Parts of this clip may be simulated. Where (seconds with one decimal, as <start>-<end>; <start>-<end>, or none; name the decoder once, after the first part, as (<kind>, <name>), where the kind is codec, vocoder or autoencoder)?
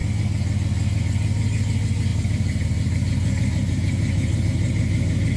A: 2.1-5.4 (vocoder, BigVGAN v2)